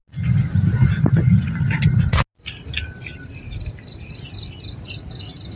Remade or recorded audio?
recorded